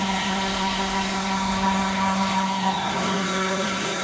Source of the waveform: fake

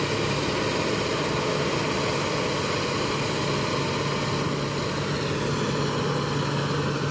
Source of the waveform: real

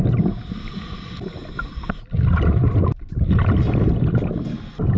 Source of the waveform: real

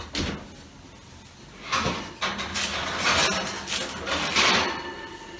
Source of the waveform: real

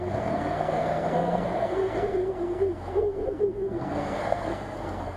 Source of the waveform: fake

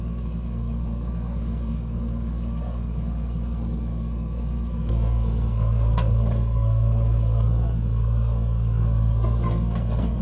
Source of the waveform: fake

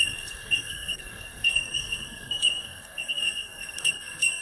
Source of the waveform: fake